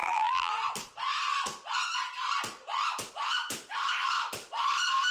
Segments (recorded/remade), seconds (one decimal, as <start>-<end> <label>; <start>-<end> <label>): 0.0-0.5 remade; 0.5-5.1 recorded

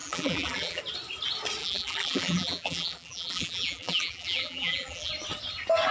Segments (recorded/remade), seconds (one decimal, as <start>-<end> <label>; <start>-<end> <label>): 0.0-0.8 remade; 0.8-1.6 recorded; 1.6-5.1 remade; 5.1-5.9 recorded

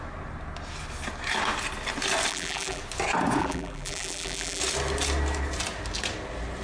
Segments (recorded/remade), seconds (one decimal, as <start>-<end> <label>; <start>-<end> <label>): 0.0-2.3 recorded; 2.3-2.8 remade; 2.8-3.4 recorded; 3.4-4.6 remade; 4.6-6.6 recorded

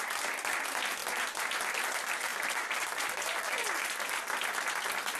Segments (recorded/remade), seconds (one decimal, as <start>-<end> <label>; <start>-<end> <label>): 0.0-2.3 recorded; 2.3-3.8 remade; 3.8-5.2 recorded

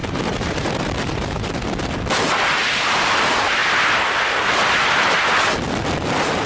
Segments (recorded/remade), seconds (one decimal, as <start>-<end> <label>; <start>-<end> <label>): 0.0-1.5 remade; 1.5-6.5 recorded

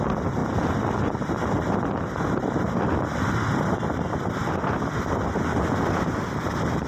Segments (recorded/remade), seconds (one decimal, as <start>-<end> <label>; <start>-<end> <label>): 0.0-6.9 recorded